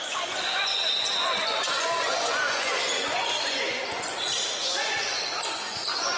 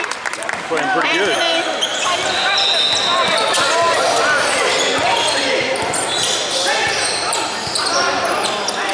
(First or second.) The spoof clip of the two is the first